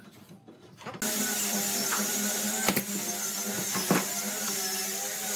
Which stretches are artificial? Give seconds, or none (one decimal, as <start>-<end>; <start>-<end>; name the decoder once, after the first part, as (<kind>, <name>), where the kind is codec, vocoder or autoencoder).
none

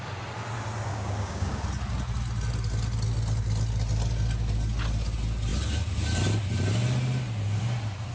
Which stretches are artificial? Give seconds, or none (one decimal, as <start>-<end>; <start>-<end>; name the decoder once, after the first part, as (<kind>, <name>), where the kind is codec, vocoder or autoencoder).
0.9-1.6 (codec, DAC)

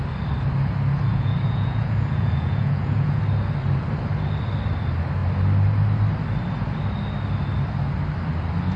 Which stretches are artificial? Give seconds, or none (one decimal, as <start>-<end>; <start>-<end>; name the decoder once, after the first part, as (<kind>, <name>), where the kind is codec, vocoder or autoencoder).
1.1-3.2 (vocoder, Vocos)